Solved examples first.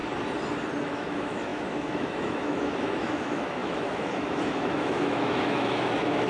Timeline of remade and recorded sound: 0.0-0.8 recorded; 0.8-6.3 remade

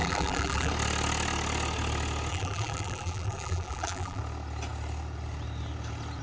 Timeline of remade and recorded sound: 0.0-0.7 remade; 0.7-2.3 recorded; 2.3-4.2 remade; 4.2-6.2 recorded